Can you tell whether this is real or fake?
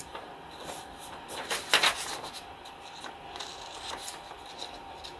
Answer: real